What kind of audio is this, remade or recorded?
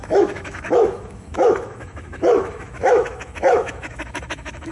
remade